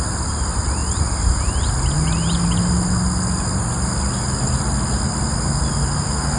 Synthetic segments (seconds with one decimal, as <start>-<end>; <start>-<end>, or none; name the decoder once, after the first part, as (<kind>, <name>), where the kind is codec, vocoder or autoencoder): none